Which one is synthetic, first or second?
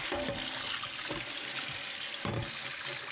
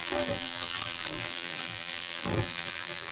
second